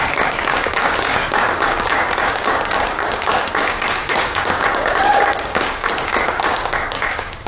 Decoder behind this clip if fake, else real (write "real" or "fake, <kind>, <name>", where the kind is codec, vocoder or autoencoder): fake, codec, DAC